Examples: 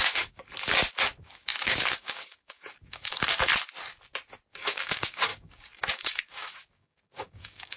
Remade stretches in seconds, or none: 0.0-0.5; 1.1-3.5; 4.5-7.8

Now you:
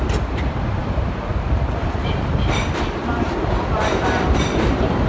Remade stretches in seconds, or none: 0.0-5.1